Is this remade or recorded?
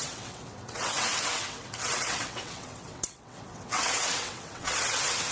remade